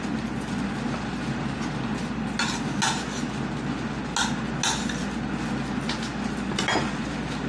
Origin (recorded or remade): recorded